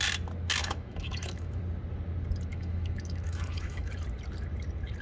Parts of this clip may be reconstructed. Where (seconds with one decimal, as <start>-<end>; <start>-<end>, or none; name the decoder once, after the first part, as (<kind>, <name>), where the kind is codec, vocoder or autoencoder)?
0.6-1.6 (autoencoder, DAC-VAE); 2.5-3.9